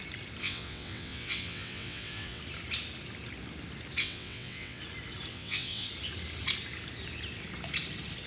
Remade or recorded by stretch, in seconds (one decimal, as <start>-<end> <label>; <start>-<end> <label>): 0.0-0.4 recorded; 0.4-2.4 remade; 2.4-4.0 recorded; 4.0-4.8 remade; 4.8-5.3 recorded; 5.3-5.9 remade; 5.9-8.3 recorded